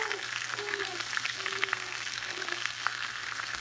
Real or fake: fake